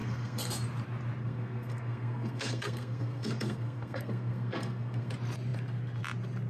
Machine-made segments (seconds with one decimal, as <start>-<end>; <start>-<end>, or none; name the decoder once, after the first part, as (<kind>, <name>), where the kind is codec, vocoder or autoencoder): 0.0-0.5 (codec, SNAC); 1.2-5.1